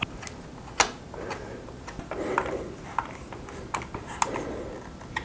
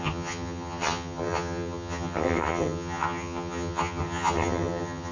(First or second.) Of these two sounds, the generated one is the second